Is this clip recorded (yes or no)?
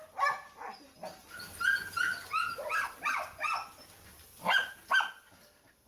yes